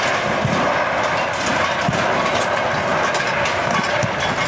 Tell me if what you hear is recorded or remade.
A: recorded